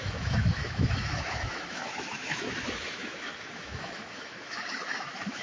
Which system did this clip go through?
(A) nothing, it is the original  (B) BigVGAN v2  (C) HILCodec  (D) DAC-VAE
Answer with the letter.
D